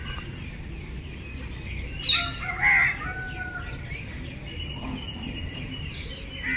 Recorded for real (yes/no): yes